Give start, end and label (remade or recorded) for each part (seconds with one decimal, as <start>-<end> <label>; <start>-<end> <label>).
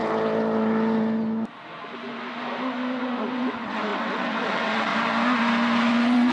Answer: 0.0-3.0 recorded; 3.0-4.9 remade; 4.9-5.8 recorded; 5.8-6.3 remade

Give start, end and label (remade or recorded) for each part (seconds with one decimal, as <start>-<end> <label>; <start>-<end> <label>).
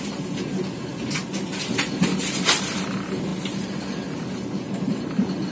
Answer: 0.0-5.5 recorded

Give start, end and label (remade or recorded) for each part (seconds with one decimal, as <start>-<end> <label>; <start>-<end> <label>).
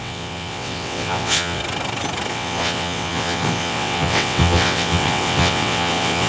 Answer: 0.0-1.6 remade; 1.6-2.3 recorded; 2.3-6.3 remade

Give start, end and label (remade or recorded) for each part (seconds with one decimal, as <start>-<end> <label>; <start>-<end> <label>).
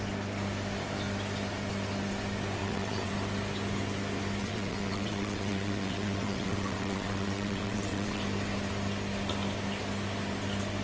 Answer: 0.0-2.6 recorded; 2.6-3.1 remade; 3.1-4.4 recorded; 4.4-8.2 remade; 8.2-10.8 recorded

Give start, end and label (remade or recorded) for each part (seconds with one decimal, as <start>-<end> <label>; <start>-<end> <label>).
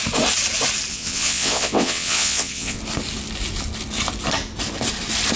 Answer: 0.0-0.9 recorded; 0.9-2.8 remade; 2.8-5.4 recorded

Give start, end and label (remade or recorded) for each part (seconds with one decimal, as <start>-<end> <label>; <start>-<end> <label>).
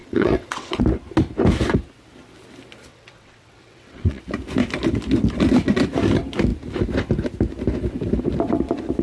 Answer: 0.0-0.8 remade; 0.8-2.9 recorded; 2.9-4.2 remade; 4.2-9.0 recorded